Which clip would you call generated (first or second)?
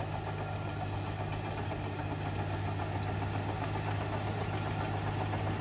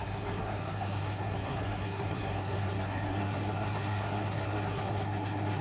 second